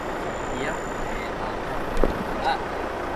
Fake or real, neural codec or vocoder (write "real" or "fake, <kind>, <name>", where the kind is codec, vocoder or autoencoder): real